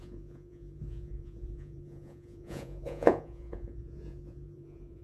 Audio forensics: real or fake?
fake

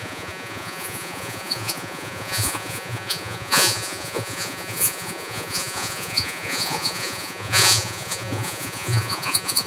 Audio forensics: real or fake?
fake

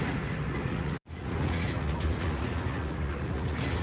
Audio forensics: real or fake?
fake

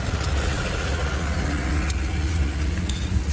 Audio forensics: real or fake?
fake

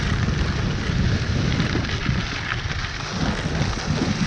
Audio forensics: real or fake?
real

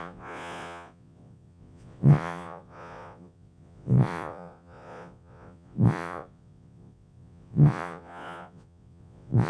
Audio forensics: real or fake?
fake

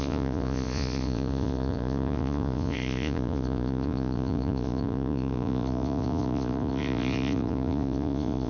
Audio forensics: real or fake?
fake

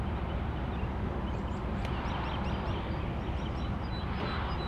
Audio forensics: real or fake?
real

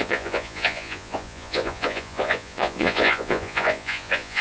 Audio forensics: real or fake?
fake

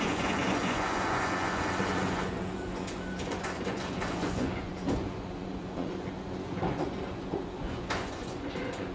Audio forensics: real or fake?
fake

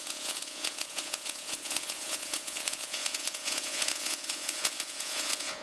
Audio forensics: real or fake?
fake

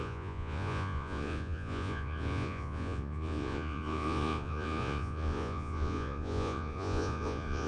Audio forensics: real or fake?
fake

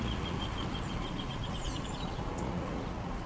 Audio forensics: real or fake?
fake